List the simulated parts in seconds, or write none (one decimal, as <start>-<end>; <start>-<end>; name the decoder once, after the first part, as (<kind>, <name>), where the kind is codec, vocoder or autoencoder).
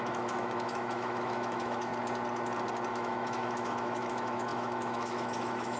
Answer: 0.0-1.9 (autoencoder, DAC-VAE); 2.9-5.8